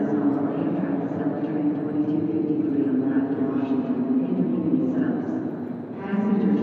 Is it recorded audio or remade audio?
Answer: recorded